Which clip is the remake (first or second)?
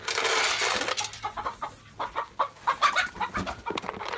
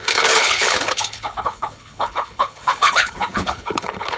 second